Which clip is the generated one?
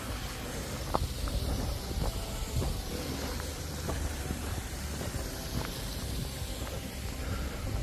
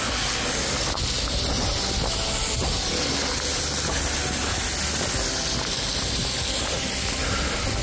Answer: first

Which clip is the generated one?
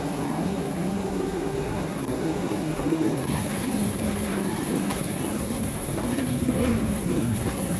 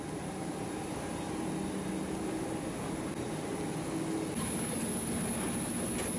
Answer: first